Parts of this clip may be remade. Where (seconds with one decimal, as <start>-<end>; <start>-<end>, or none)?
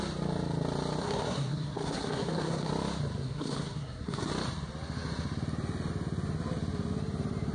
1.0-2.7; 3.2-4.3